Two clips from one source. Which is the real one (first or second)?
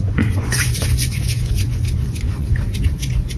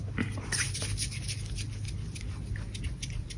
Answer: second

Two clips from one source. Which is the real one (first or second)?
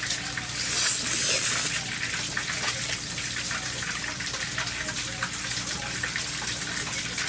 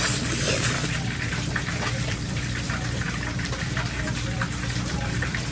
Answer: first